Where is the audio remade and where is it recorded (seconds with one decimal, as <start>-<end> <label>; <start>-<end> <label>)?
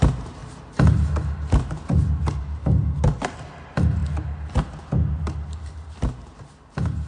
0.0-0.4 remade; 0.4-1.5 recorded; 1.5-2.6 remade; 2.6-3.2 recorded; 3.2-4.0 remade; 4.0-5.1 recorded; 5.1-7.1 remade